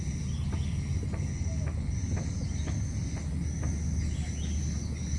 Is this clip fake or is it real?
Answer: real